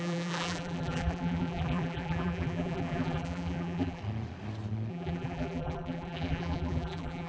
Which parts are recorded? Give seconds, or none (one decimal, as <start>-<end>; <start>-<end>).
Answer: 4.0-4.9